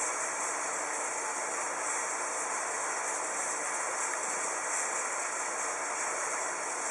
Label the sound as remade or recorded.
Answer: recorded